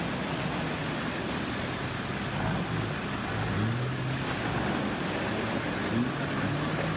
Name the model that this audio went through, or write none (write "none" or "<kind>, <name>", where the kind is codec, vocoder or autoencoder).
none